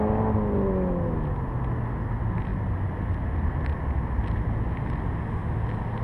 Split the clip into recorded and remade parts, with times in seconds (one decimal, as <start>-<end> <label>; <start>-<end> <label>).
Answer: 0.0-6.0 recorded

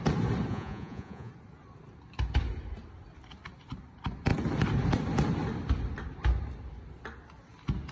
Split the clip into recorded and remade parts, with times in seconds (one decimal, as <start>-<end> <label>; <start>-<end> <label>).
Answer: 0.0-0.5 recorded; 0.5-1.3 remade; 1.3-7.9 recorded

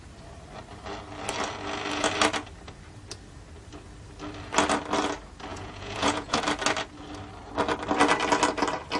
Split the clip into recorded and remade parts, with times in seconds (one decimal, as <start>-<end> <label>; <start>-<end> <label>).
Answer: 0.0-5.5 recorded; 5.5-6.4 remade; 6.4-9.0 recorded